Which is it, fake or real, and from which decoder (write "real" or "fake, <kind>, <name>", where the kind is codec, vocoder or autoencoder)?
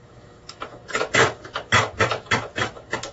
fake, autoencoder, DAC-VAE